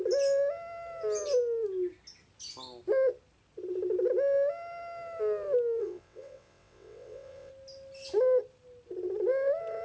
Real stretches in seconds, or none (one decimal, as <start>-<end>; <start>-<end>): 0.0-5.8; 7.5-9.8